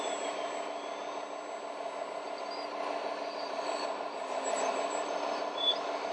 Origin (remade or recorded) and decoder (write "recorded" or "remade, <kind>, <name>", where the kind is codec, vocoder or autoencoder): recorded